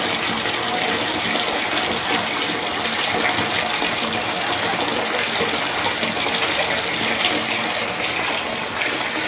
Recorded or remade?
recorded